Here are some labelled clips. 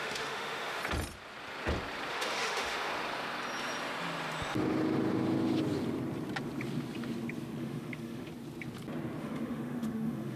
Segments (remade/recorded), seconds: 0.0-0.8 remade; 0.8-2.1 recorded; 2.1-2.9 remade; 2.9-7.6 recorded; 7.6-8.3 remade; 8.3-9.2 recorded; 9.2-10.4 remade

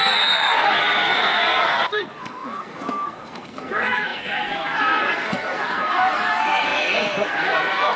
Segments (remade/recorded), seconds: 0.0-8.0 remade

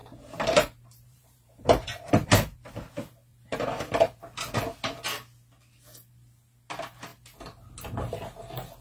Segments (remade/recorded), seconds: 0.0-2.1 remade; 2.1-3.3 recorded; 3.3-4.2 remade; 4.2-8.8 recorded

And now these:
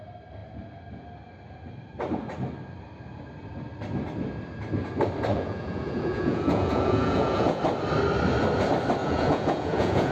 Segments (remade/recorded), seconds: 0.0-5.3 recorded; 5.3-7.6 remade; 7.6-9.0 recorded; 9.0-10.1 remade

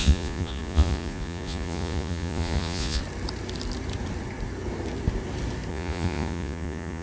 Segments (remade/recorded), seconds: 0.0-3.0 remade; 3.0-5.7 recorded; 5.7-7.0 remade